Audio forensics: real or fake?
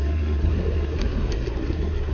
fake